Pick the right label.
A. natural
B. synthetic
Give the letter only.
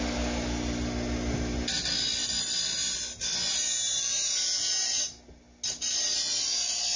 A